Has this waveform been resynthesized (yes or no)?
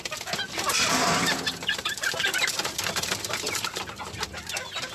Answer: yes